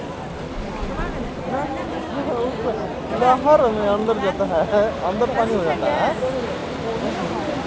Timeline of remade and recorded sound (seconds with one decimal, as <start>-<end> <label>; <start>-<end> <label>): 0.0-7.7 recorded